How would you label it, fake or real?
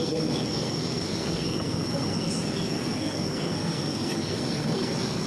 fake